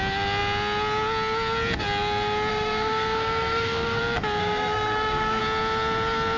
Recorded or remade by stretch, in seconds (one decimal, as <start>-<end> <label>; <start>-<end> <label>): 0.0-2.5 recorded; 2.5-4.0 remade; 4.0-4.4 recorded; 4.4-5.4 remade; 5.4-6.4 recorded